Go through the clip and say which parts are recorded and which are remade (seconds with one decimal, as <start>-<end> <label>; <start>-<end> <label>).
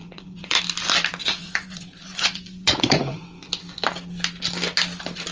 0.0-0.6 remade; 0.6-1.2 recorded; 1.2-3.2 remade; 3.2-5.3 recorded